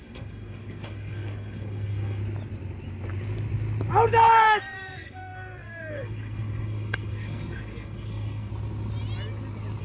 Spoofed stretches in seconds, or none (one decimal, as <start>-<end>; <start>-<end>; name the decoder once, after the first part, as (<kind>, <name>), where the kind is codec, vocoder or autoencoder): 0.0-2.2 (codec, SNAC); 4.3-8.5